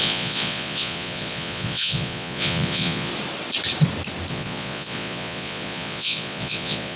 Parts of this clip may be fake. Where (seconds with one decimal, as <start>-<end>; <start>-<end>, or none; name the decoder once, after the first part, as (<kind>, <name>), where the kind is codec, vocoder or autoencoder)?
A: 0.0-3.1 (vocoder, Vocos); 4.3-7.0